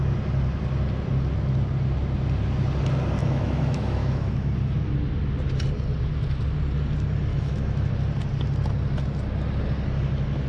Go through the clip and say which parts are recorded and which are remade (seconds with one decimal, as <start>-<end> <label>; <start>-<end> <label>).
0.0-3.2 recorded; 3.2-4.5 remade; 4.5-7.3 recorded; 7.3-7.9 remade; 7.9-10.5 recorded